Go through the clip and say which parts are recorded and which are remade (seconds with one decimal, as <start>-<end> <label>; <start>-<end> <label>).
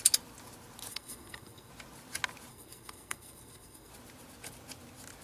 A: 0.0-0.9 recorded; 0.9-1.7 remade; 1.7-2.5 recorded; 2.5-3.9 remade; 3.9-5.2 recorded